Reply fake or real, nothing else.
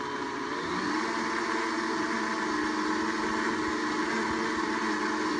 real